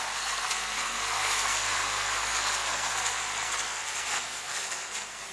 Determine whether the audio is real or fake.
fake